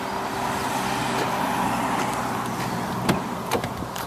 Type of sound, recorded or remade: recorded